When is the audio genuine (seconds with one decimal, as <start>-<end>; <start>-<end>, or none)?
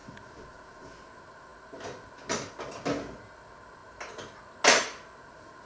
0.0-5.7